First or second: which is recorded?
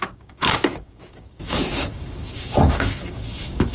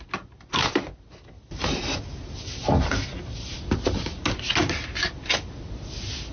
second